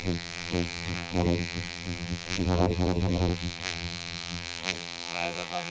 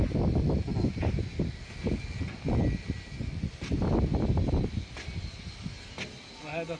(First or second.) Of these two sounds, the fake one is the first